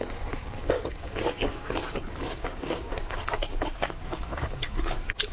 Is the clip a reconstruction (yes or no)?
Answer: yes